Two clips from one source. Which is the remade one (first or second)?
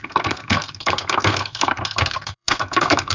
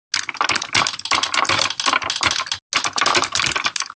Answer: first